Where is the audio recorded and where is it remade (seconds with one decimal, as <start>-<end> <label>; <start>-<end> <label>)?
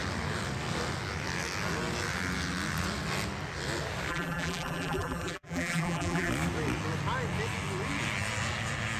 0.0-4.1 recorded; 4.1-6.3 remade; 6.3-9.0 recorded